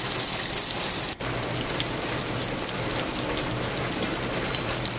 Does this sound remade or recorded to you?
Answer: recorded